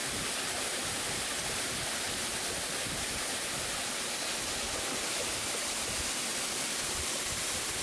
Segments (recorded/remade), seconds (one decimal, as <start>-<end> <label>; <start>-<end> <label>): 0.0-1.4 recorded; 1.4-3.8 remade; 3.8-6.3 recorded; 6.3-7.2 remade; 7.2-7.8 recorded